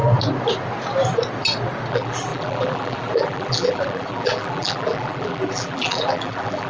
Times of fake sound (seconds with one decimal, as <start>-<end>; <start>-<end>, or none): 1.9-6.7